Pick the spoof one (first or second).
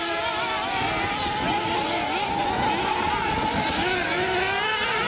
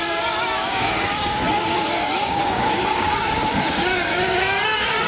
second